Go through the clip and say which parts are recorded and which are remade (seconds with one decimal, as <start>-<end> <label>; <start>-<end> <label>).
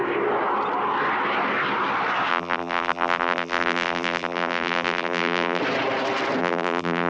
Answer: 0.0-2.3 recorded; 2.3-5.6 remade; 5.6-6.4 recorded; 6.4-7.1 remade